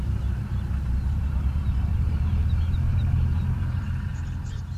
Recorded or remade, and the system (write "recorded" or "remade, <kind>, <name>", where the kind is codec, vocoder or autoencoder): remade, vocoder, BigVGAN v2